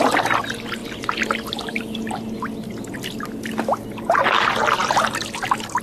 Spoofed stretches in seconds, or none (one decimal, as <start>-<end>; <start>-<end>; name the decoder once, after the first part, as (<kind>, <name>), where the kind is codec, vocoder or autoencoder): none